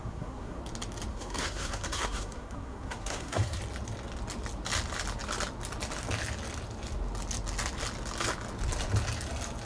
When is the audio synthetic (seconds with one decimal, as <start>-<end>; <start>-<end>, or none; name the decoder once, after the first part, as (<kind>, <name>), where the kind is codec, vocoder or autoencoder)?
0.0-0.6 (codec, SNAC); 1.1-3.6